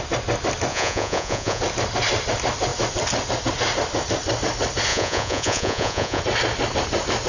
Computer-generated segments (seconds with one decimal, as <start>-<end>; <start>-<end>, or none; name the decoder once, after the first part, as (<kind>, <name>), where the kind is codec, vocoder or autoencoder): 0.7-1.6 (vocoder, Vocos); 4.9-6.2